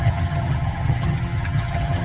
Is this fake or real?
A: fake